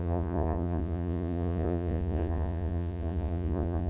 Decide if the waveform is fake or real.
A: fake